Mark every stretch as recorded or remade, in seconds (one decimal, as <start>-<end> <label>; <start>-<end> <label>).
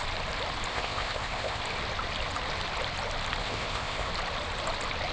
0.0-0.7 recorded; 0.7-1.6 remade; 1.6-3.4 recorded; 3.4-4.1 remade; 4.1-5.1 recorded